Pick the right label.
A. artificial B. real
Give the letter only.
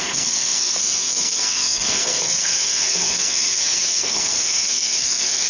A